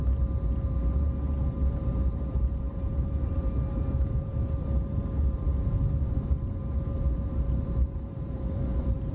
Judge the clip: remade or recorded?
remade